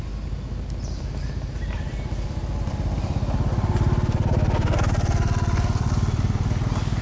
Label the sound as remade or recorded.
recorded